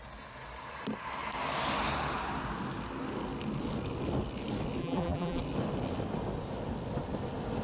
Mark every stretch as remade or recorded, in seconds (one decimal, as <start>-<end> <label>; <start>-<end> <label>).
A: 0.0-4.8 recorded; 4.8-5.4 remade; 5.4-7.6 recorded